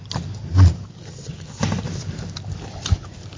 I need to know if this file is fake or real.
real